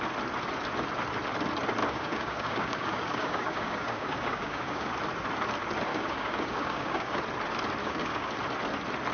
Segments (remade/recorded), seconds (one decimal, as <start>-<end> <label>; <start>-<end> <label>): 0.0-1.8 recorded; 1.8-4.9 remade; 4.9-5.9 recorded; 5.9-7.2 remade; 7.2-7.8 recorded; 7.8-8.3 remade; 8.3-9.1 recorded